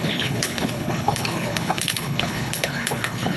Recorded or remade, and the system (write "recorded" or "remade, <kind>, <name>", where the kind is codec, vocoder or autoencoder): remade, codec, HILCodec